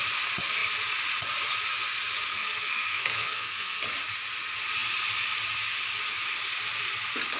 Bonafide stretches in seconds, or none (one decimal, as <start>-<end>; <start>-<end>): 0.0-2.3; 3.8-7.4